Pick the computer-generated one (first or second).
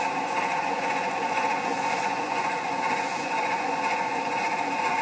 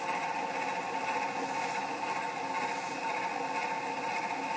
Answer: first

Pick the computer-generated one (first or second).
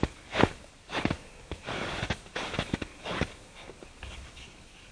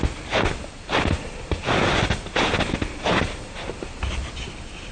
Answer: first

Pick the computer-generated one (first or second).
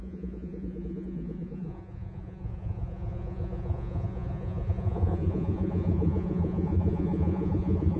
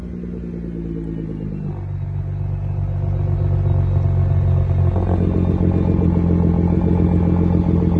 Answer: first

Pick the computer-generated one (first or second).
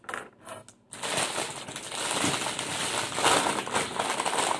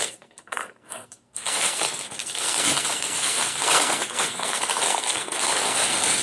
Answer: second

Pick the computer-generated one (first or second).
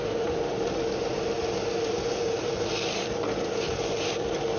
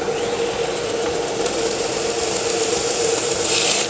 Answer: second